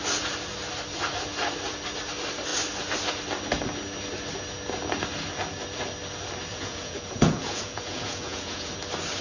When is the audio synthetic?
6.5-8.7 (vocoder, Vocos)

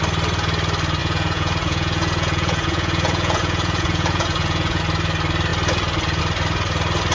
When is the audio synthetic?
1.0-4.8 (vocoder, Vocos)

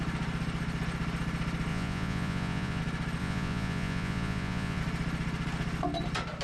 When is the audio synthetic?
1.7-2.8 (vocoder, Vocos); 3.2-4.8